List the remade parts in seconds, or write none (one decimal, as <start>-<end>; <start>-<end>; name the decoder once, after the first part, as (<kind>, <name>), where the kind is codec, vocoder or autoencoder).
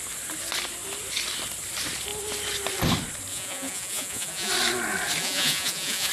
3.3-4.5 (vocoder, Vocos); 5.2-6.1